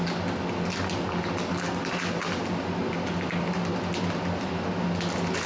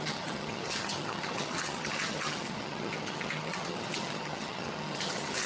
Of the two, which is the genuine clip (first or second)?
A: first